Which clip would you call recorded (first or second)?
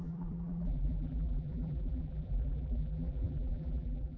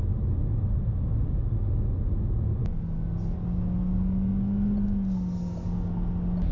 second